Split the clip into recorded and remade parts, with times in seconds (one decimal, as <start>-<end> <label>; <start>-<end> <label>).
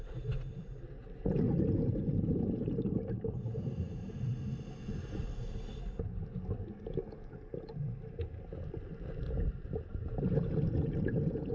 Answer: 0.0-1.0 recorded; 1.0-4.3 remade; 4.3-11.5 recorded